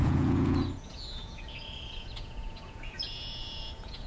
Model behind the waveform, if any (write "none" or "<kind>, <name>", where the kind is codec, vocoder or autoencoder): vocoder, Vocos